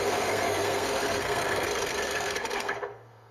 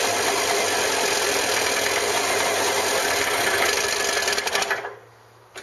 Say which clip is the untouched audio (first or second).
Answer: second